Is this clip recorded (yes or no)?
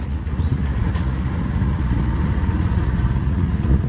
no